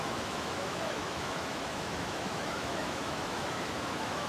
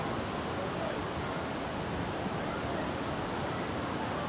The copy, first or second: first